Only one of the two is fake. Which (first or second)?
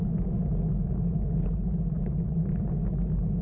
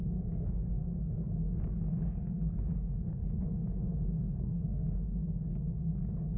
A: second